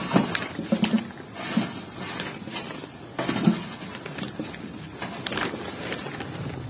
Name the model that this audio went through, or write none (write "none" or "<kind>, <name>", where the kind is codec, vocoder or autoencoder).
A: none